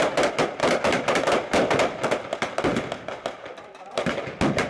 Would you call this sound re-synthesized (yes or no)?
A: no